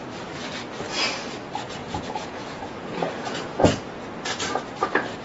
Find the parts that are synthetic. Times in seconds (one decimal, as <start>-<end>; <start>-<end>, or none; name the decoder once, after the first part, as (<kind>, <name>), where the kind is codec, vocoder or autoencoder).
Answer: 1.8-3.8 (vocoder, Vocos)